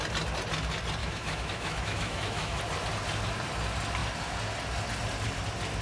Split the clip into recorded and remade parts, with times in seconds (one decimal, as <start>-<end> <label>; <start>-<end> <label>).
0.0-1.0 recorded; 1.0-2.6 remade; 2.6-5.8 recorded

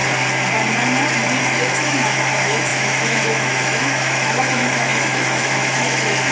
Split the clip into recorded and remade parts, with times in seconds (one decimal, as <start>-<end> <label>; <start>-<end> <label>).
0.0-1.4 recorded; 1.4-6.3 remade